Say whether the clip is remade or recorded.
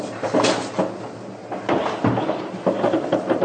recorded